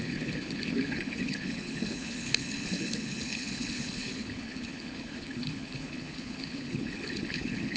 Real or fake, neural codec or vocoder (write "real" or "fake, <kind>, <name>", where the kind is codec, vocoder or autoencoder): fake, codec, HILCodec